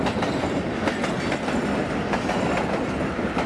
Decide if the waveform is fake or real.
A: real